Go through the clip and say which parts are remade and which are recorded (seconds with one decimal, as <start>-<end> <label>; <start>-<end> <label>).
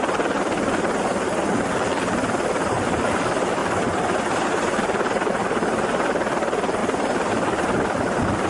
0.0-8.5 recorded